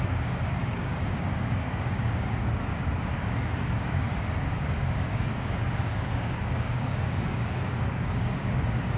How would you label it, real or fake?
fake